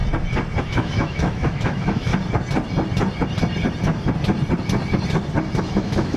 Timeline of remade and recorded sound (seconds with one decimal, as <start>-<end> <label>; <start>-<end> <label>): 0.0-0.6 recorded; 0.6-2.1 remade; 2.1-5.6 recorded; 5.6-6.2 remade

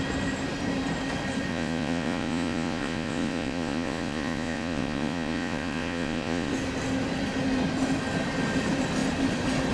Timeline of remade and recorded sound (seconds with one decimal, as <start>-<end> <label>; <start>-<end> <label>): 0.0-1.5 recorded; 1.5-6.5 remade; 6.5-9.7 recorded